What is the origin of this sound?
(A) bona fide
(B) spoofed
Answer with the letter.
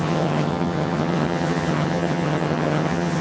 B